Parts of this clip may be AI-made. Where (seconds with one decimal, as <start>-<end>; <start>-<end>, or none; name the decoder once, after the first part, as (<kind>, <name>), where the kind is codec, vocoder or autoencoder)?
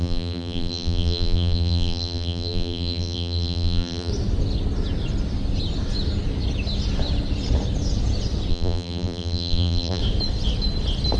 0.0-4.1 (vocoder, BigVGAN v2); 8.5-10.0